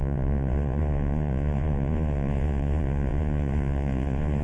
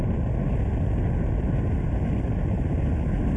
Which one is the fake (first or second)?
first